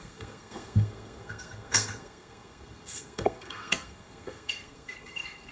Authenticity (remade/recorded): remade